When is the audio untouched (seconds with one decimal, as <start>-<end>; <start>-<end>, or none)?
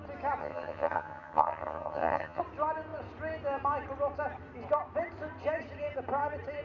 0.0-0.4; 2.4-6.6